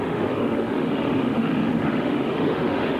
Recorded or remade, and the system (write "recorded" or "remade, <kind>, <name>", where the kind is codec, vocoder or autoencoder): remade, autoencoder, DAC-VAE